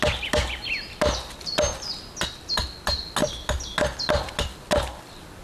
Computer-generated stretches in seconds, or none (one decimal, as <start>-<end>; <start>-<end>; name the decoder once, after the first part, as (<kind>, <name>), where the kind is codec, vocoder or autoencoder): none